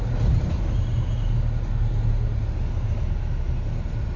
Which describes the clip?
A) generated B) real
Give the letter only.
B